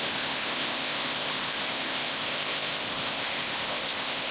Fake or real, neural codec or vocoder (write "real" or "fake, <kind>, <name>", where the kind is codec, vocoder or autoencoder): fake, codec, ZipCodec